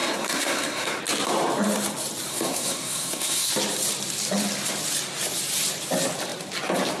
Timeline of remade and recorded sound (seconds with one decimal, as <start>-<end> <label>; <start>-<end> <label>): 0.0-1.0 remade; 1.0-2.3 recorded; 2.3-3.5 remade; 3.5-7.0 recorded